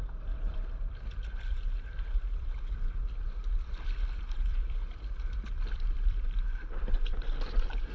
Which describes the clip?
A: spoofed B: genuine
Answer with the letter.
A